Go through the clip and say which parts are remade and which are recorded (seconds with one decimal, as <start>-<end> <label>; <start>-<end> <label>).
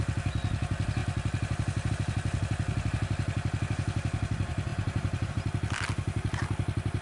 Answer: 0.0-4.7 recorded; 4.7-5.3 remade; 5.3-7.0 recorded